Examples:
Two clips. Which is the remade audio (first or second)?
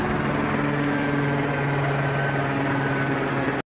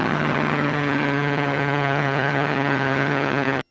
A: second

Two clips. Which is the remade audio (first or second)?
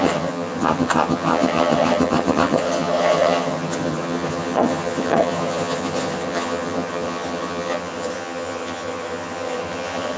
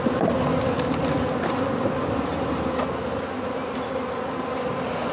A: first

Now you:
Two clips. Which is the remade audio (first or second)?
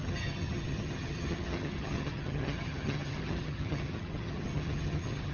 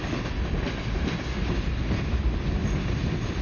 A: first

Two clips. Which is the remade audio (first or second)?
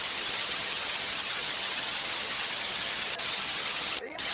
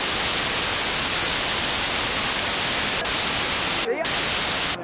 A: first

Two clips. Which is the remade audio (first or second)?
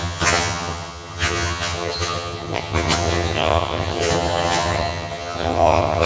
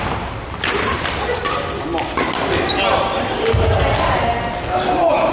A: first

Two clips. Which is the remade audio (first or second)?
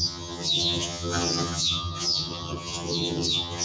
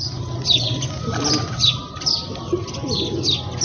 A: first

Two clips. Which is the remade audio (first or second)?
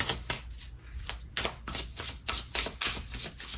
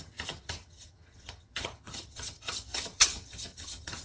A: second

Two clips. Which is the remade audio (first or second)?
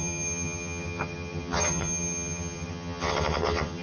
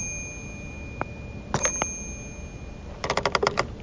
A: first